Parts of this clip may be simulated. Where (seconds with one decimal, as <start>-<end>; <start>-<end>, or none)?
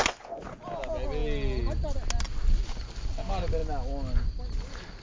none